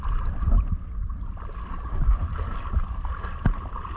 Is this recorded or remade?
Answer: recorded